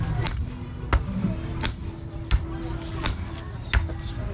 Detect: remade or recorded recorded